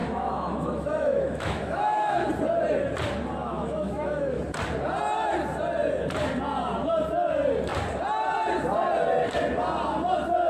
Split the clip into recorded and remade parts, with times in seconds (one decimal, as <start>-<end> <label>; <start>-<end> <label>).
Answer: 0.0-2.3 remade; 2.3-3.4 recorded; 3.4-4.4 remade; 4.4-10.5 recorded